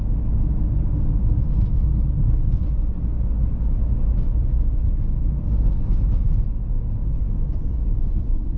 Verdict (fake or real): real